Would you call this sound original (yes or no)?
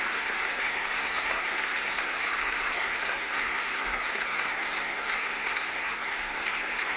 no